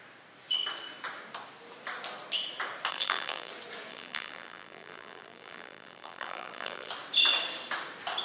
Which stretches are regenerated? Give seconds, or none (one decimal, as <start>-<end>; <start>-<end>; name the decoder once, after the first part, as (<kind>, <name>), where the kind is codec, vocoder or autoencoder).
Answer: 2.9-3.5 (vocoder, BigVGAN v2); 3.9-6.9